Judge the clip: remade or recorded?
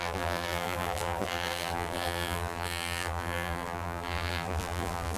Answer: remade